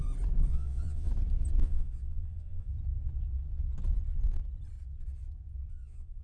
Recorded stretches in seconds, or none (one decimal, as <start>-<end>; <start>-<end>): 0.0-0.5; 1.1-1.6; 2.7-5.7